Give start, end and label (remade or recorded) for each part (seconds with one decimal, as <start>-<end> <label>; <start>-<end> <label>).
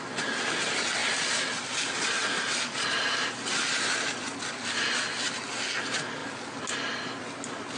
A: 0.0-7.8 recorded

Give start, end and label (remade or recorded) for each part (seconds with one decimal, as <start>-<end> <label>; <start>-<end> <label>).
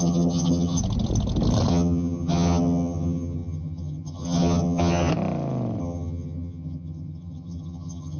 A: 0.0-0.8 remade; 0.8-1.7 recorded; 1.7-5.1 remade; 5.1-5.8 recorded; 5.8-8.2 remade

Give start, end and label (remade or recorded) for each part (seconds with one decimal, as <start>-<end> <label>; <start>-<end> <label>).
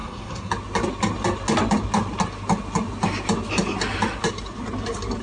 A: 0.0-0.5 remade; 0.5-5.2 recorded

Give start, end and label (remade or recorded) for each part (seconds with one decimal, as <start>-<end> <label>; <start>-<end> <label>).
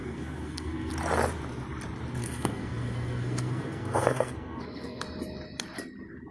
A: 0.0-0.9 remade; 0.9-2.2 recorded; 2.2-5.0 remade; 5.0-6.3 recorded